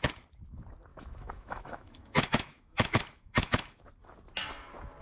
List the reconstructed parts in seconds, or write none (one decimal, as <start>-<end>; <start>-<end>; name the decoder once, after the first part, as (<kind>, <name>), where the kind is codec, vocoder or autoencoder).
0.9-3.9 (autoencoder, DAC-VAE)